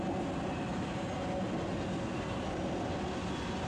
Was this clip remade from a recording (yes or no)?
no